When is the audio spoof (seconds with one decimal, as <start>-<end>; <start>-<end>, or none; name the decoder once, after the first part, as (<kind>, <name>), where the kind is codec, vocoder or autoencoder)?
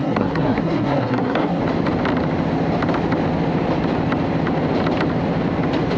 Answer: 0.0-1.6 (codec, SNAC)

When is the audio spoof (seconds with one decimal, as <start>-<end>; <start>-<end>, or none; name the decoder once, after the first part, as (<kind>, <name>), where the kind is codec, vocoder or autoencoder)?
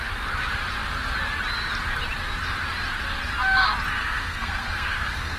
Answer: 4.0-5.4 (codec, SNAC)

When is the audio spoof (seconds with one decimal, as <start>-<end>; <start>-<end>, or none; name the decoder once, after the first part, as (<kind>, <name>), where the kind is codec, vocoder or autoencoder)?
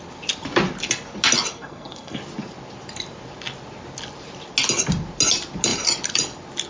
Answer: 1.5-2.2 (codec, SNAC)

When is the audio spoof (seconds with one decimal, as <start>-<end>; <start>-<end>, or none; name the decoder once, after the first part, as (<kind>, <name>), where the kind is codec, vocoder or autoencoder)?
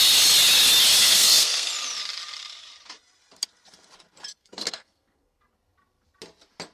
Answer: 1.0-1.7 (codec, SNAC); 4.4-5.4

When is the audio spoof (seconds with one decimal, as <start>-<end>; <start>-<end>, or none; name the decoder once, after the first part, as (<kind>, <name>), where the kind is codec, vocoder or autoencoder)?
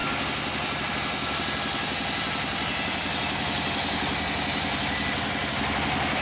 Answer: none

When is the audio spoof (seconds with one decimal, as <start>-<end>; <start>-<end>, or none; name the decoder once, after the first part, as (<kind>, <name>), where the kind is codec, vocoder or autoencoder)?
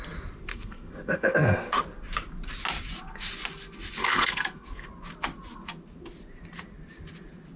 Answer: 0.5-1.7 (codec, SNAC); 4.0-4.9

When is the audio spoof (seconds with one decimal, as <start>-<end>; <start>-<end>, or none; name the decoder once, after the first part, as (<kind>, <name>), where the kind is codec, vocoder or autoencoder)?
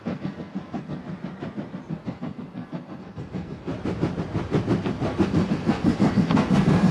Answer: 0.0-1.0 (codec, SNAC); 1.9-3.7; 5.2-6.9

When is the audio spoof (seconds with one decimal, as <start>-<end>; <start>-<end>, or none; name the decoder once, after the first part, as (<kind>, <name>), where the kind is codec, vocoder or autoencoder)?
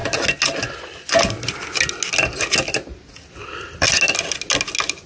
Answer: none